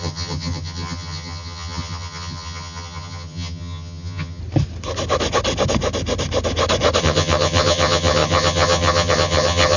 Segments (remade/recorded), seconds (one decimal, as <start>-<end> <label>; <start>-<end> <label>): 0.0-4.4 remade; 4.4-7.0 recorded; 7.0-9.8 remade